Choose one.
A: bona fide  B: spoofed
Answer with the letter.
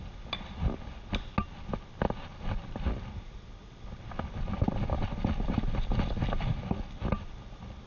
A